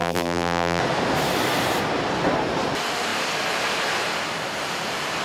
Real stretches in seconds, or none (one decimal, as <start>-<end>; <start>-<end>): 0.8-5.2